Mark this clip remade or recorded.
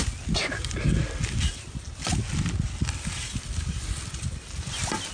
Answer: recorded